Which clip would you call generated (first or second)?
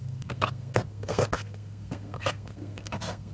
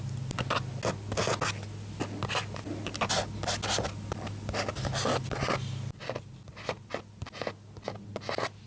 first